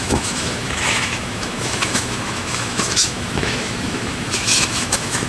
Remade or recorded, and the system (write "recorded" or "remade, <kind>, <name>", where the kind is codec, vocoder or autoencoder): remade, autoencoder, DAC-VAE